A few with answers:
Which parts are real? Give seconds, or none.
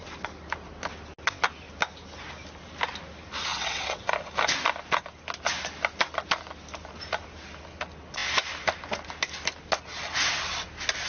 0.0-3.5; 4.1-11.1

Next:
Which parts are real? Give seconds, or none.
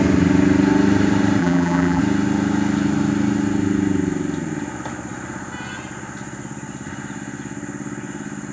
0.0-1.4; 2.0-8.5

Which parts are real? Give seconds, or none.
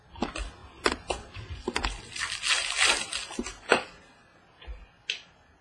0.0-5.6